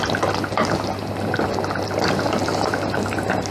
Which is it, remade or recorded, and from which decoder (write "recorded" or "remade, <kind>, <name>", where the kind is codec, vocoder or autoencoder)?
recorded